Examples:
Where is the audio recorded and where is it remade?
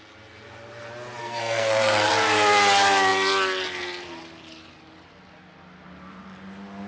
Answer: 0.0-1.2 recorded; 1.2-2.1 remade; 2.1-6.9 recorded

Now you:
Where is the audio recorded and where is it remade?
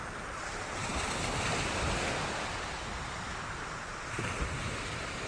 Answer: 0.0-5.3 recorded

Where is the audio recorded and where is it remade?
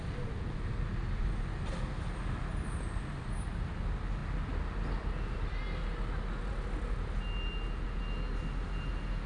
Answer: 0.0-9.3 recorded